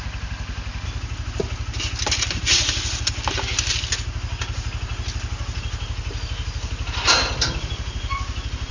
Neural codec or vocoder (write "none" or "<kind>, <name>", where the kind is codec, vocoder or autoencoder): none